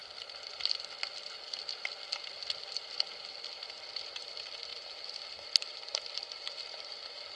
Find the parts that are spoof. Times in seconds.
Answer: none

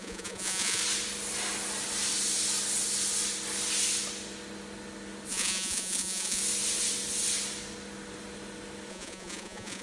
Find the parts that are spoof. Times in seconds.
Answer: 0.0-0.8 (vocoder, Vocos); 5.3-6.4; 8.9-9.8

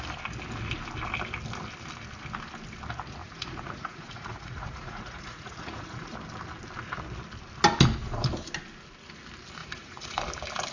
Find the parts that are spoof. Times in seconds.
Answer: 3.2-6.1 (vocoder, Vocos); 9.6-10.2

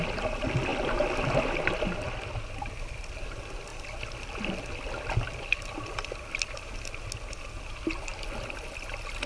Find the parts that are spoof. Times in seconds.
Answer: none

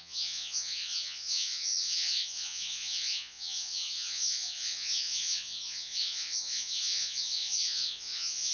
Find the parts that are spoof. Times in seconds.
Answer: 0.0-8.5 (vocoder, Vocos)

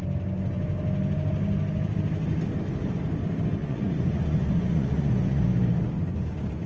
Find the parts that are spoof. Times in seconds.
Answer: 3.6-5.4 (vocoder, Vocos)

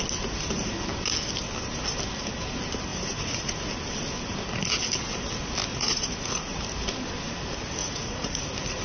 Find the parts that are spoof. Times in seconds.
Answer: 2.9-3.6 (vocoder, Vocos); 5.7-6.6; 7.8-8.4